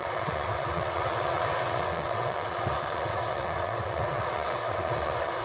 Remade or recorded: remade